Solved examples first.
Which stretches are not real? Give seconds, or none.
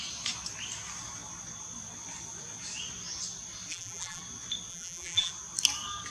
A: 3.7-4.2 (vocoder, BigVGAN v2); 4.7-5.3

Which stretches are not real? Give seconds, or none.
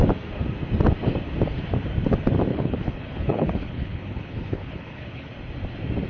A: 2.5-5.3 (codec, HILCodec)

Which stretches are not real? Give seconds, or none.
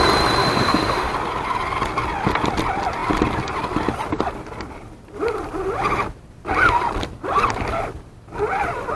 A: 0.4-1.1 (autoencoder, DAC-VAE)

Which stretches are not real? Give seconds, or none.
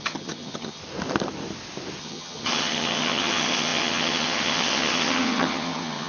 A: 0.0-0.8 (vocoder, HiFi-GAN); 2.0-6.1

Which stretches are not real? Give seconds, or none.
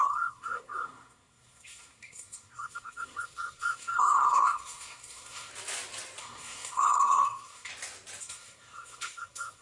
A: 0.0-5.5 (codec, SNAC); 6.2-7.7; 8.2-9.6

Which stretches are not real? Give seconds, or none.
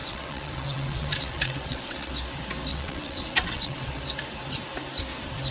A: 0.0-2.1 (vocoder, WaveNeXt); 2.7-4.0